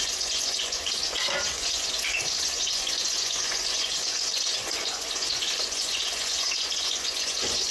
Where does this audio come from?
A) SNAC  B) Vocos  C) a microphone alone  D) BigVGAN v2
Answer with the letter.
B